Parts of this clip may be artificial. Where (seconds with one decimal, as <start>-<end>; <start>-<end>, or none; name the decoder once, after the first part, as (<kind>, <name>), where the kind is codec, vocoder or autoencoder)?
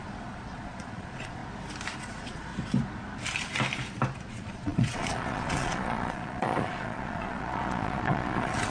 0.0-1.4 (vocoder, Vocos); 2.0-2.5; 4.3-8.7